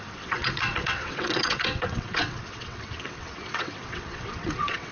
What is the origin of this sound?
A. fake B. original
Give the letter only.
A